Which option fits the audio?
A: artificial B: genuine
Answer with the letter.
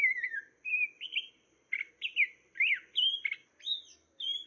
B